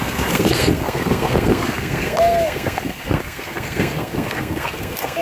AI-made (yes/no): yes